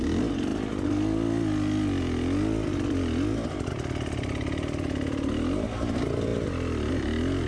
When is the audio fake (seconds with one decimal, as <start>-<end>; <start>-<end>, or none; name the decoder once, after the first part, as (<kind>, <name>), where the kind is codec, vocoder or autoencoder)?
none